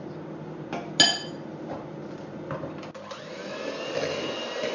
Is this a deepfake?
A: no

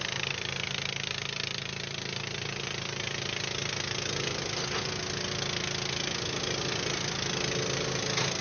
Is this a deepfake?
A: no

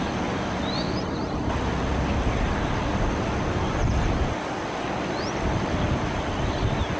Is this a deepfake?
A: no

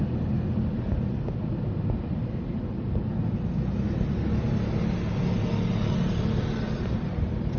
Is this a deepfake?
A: no